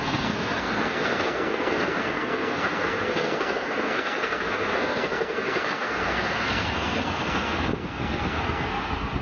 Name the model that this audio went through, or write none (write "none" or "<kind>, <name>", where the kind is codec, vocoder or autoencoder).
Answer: codec, SNAC